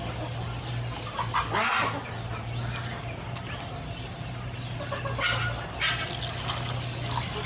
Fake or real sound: real